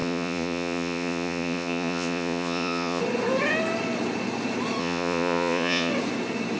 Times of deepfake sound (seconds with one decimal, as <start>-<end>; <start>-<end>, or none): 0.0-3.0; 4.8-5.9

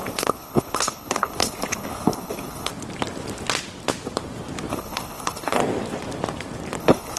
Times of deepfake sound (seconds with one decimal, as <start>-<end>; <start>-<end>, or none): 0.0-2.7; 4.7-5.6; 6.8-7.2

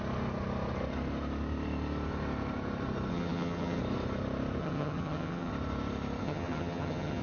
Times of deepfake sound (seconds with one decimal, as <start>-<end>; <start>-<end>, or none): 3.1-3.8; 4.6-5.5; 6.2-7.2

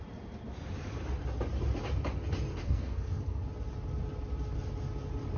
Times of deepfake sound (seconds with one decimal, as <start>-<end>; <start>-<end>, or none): 2.5-3.4

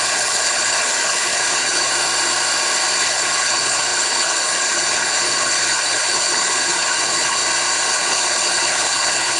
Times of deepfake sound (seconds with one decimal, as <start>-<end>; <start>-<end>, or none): 0.0-1.9; 3.0-7.4; 7.9-9.4

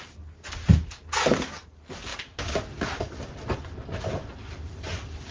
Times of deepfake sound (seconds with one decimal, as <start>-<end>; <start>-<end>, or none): none

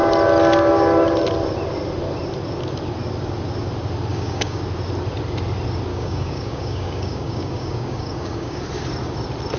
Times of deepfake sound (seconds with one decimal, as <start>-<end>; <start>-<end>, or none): 4.1-4.6; 5.9-8.6